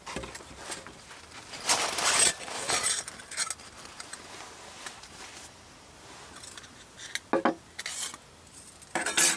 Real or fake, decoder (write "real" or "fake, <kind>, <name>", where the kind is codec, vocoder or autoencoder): real